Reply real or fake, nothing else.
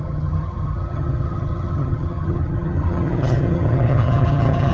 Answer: fake